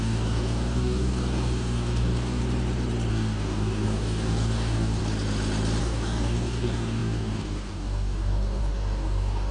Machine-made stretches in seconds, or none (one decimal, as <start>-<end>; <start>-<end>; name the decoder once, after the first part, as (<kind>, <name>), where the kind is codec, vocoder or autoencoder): 0.0-2.4 (codec, DAC); 3.1-5.0; 5.8-9.5

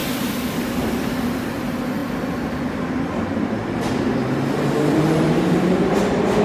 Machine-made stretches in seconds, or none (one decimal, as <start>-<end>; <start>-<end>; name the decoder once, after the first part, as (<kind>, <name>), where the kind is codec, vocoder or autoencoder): none

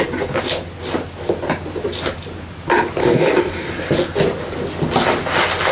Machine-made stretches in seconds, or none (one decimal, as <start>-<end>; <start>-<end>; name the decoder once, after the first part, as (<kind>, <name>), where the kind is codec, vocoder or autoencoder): 3.0-3.7 (codec, DAC)

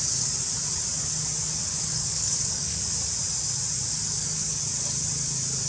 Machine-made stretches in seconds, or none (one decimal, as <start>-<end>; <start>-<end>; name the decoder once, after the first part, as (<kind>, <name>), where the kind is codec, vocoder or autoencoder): 1.7-2.8 (codec, DAC); 4.0-4.6

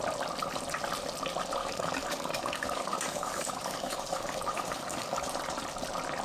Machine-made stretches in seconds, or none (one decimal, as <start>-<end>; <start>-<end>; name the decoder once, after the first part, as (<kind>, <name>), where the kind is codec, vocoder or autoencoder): 1.6-5.3 (codec, DAC)